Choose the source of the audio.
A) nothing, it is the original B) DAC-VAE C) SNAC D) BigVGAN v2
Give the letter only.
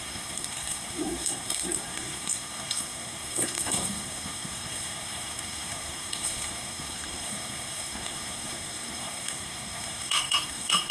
C